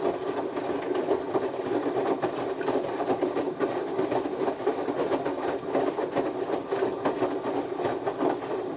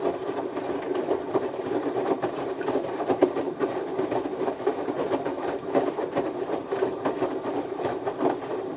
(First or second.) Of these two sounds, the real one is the first